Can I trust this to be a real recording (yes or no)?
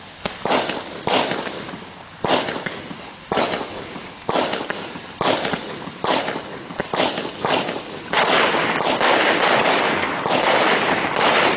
yes